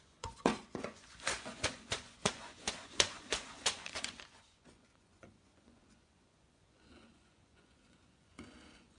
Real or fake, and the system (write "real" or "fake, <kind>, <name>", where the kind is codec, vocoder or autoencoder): fake, vocoder, Vocos